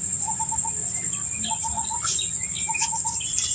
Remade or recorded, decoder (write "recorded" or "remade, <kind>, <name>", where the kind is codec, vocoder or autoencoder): remade, vocoder, BigVGAN v2